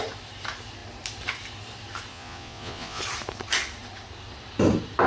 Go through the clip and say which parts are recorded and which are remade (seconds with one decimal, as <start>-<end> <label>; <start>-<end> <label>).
0.0-2.1 recorded; 2.1-3.0 remade; 3.0-5.1 recorded